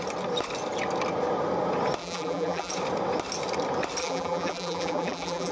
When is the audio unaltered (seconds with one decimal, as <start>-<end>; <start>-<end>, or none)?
0.0-2.0; 2.7-4.0